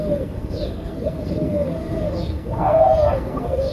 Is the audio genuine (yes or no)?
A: no